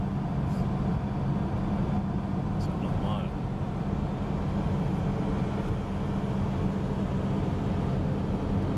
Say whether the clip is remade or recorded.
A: recorded